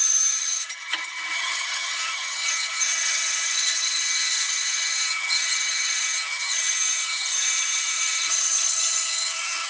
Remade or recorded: remade